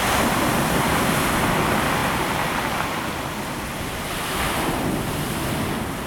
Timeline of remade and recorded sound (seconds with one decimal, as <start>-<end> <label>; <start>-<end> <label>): 0.0-2.0 remade; 2.0-6.1 recorded